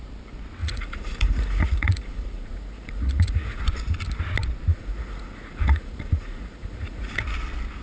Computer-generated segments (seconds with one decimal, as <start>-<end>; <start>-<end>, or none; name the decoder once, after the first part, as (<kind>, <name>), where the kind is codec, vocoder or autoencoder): 0.6-3.6 (vocoder, Vocos); 4.7-7.2